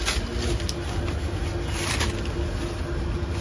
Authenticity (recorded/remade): recorded